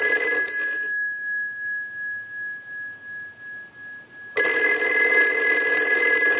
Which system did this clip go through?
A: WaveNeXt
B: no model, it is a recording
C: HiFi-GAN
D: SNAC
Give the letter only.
B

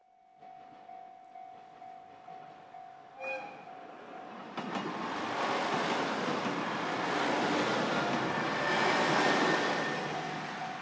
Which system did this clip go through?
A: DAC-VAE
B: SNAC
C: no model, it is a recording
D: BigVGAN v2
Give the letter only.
C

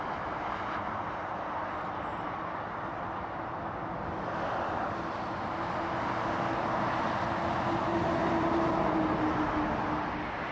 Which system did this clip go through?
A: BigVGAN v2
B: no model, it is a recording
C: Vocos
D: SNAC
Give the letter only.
B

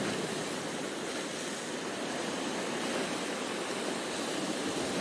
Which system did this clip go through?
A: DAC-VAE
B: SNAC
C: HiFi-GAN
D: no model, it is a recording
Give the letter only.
D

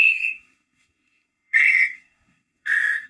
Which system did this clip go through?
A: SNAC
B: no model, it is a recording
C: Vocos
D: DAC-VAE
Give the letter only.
A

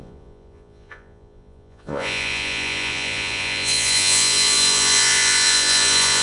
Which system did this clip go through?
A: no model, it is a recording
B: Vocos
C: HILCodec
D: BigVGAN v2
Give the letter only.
B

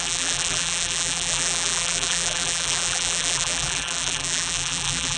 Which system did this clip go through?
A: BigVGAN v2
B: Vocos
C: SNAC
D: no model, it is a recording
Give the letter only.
A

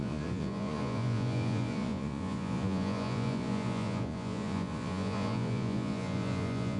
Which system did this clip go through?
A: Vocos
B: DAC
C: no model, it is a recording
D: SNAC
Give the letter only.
A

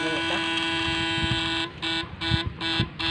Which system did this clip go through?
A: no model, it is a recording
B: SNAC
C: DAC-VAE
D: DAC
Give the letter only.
A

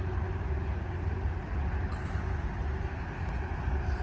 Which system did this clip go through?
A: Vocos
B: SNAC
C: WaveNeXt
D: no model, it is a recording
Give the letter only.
D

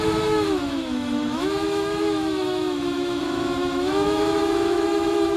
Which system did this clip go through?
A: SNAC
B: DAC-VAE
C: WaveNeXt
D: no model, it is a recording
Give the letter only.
B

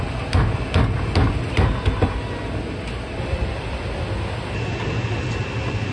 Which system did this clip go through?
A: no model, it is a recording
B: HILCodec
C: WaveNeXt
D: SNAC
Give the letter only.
A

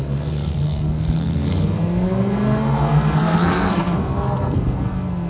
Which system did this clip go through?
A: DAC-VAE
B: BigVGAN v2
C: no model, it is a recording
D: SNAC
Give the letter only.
D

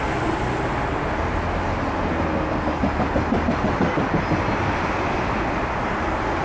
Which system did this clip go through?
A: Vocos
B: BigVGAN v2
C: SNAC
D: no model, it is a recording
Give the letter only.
D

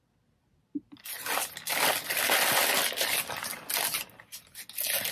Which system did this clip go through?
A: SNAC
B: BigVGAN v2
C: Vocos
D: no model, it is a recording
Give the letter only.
D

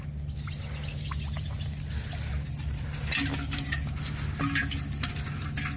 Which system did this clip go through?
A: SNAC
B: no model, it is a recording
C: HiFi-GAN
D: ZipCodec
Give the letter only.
B